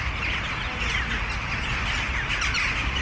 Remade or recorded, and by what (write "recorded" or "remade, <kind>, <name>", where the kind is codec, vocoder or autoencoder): recorded